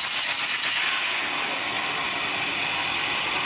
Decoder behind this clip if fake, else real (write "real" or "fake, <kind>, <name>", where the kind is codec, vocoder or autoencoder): real